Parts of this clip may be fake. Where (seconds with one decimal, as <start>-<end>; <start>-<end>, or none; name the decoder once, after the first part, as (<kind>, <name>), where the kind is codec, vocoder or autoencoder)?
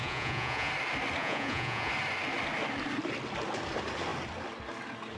0.0-0.7 (vocoder, Vocos); 1.2-1.9